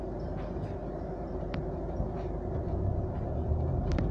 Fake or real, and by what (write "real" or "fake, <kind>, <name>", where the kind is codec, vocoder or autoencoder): real